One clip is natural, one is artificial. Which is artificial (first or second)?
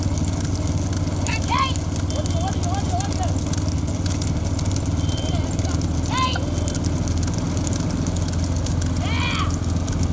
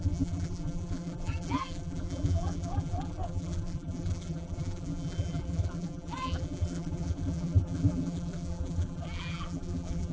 second